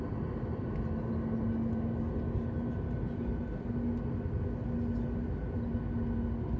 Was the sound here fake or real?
real